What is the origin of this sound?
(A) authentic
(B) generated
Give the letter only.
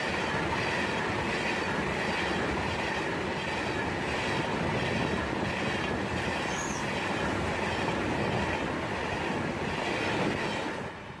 A